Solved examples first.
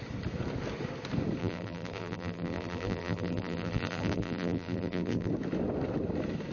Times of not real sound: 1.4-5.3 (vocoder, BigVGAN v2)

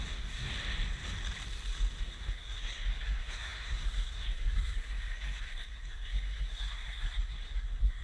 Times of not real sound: 0.0-0.5 (codec, SNAC); 2.0-8.0

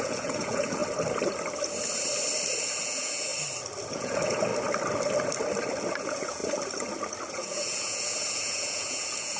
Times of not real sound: 0.0-0.8 (vocoder, Vocos); 2.6-3.3; 3.9-4.5; 5.9-6.4; 7.3-9.4

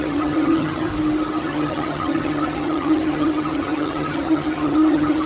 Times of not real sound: 0.0-0.9 (vocoder, HiFi-GAN); 1.4-5.3

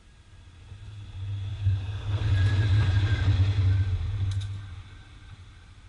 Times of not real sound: 1.5-2.3 (codec, SNAC)

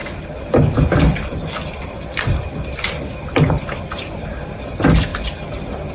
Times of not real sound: 0.0-5.9 (vocoder, BigVGAN v2)